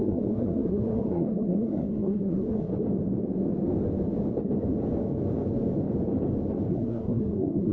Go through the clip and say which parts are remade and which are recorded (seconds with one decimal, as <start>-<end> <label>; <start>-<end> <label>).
0.0-2.7 remade; 2.7-6.7 recorded; 6.7-7.7 remade